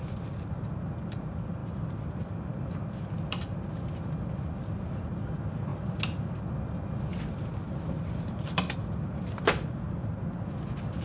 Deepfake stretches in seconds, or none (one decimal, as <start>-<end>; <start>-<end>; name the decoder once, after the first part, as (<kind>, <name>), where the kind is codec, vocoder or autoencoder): 1.6-3.6 (vocoder, BigVGAN v2); 7.1-10.1

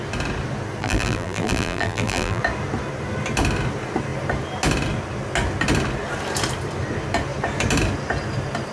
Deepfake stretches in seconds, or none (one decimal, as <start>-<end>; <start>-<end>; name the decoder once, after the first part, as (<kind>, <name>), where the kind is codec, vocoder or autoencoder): 0.8-2.4 (vocoder, BigVGAN v2)